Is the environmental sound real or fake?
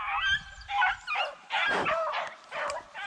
real